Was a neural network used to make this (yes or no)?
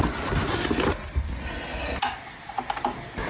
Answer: no